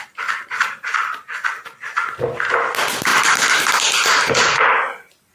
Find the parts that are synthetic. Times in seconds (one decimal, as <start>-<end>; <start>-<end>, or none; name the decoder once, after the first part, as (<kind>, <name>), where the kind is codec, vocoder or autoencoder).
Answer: 3.1-4.3 (vocoder, BigVGAN v2)